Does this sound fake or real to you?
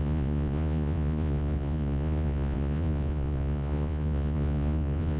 fake